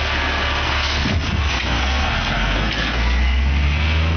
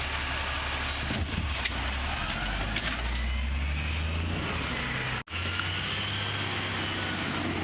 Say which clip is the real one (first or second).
second